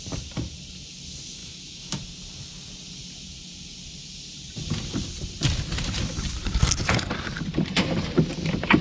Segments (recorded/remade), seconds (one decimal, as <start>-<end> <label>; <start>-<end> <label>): 0.0-1.4 recorded; 1.4-1.9 remade; 1.9-8.8 recorded